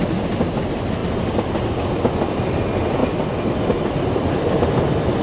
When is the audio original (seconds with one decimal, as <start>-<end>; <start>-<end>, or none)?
0.0-3.0; 4.5-5.2